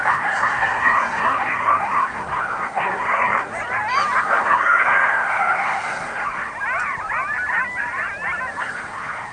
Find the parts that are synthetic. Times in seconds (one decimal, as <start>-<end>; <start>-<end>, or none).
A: 0.0-3.5; 4.2-6.5; 8.6-9.3